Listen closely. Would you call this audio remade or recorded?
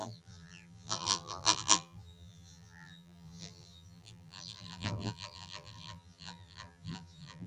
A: remade